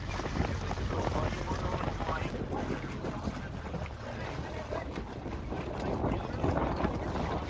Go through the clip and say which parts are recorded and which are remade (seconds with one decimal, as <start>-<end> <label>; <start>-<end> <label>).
0.0-7.5 recorded